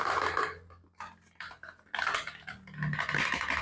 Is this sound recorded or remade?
recorded